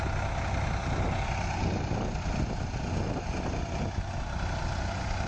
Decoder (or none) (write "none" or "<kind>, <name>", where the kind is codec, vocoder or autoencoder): none